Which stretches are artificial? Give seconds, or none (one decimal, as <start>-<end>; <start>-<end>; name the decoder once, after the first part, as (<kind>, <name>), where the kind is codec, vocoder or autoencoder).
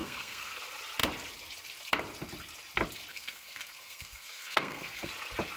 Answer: 0.0-0.6 (codec, SNAC); 3.1-5.1